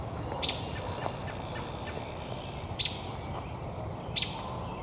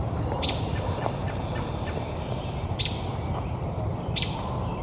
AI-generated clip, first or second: second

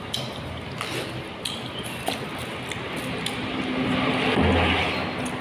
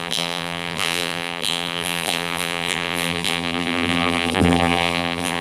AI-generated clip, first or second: second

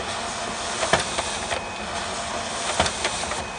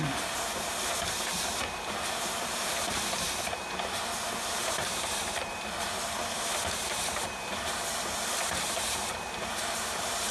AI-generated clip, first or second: second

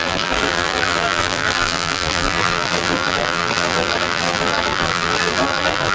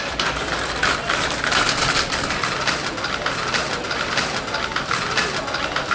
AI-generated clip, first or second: first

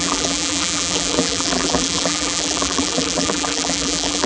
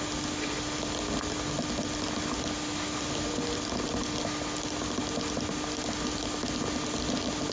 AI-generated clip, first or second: first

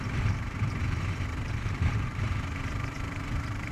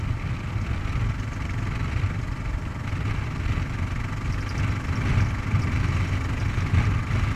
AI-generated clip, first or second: first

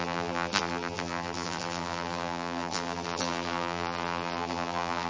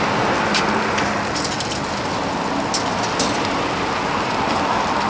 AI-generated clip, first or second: first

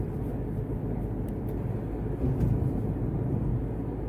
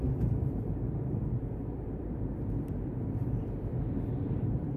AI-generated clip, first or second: second